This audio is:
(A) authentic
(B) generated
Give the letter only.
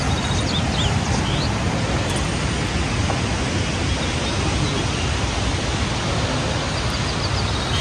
A